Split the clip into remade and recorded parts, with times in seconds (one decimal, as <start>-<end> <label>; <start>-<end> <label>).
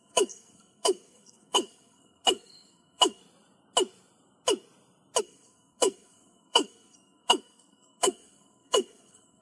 0.0-3.2 remade; 3.2-5.2 recorded; 5.2-9.4 remade